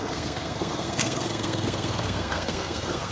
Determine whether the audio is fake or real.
fake